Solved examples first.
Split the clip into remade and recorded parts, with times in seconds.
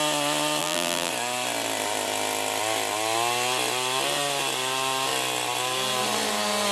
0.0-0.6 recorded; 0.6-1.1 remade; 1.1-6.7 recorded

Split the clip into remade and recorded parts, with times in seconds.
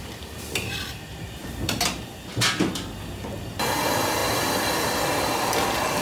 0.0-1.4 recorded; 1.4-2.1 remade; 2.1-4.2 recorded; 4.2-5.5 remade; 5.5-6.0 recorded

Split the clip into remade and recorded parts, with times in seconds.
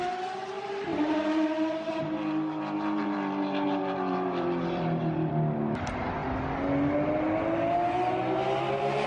0.0-0.9 recorded; 0.9-5.3 remade; 5.3-9.1 recorded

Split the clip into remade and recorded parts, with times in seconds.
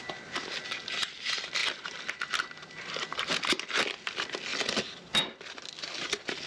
0.0-6.5 recorded